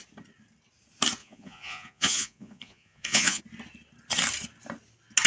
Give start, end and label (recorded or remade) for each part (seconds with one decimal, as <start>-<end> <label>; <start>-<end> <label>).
0.0-1.2 recorded; 1.2-3.4 remade; 3.4-5.3 recorded